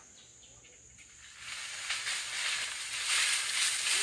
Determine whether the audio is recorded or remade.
recorded